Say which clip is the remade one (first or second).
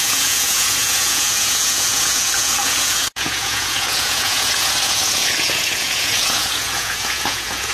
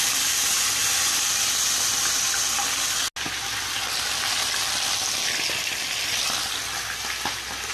first